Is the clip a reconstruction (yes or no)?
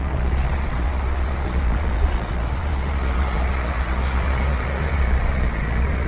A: yes